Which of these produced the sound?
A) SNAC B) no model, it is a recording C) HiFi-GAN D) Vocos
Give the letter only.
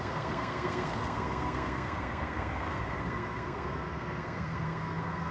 A